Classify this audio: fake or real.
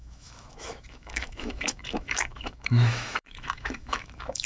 fake